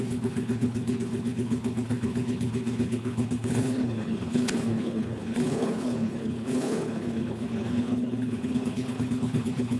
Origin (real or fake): fake